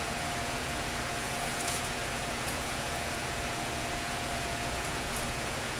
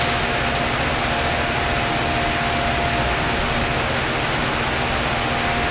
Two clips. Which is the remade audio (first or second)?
first